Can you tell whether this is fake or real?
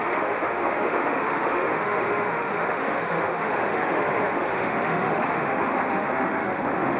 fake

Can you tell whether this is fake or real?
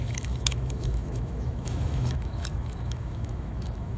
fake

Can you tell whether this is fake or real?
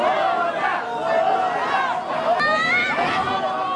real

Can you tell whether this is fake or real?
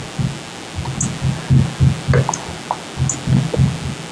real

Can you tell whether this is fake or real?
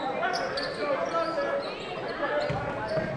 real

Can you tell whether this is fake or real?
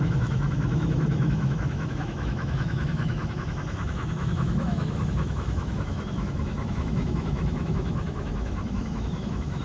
fake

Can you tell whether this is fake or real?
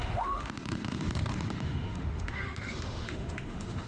fake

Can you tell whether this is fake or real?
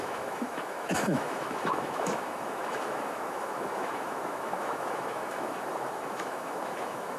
fake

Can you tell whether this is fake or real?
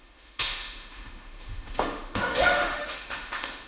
fake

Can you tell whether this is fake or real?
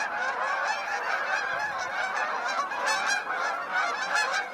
real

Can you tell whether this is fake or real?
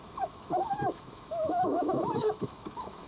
fake